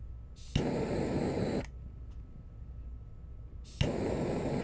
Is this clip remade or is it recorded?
recorded